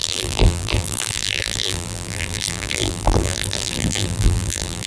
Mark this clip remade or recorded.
remade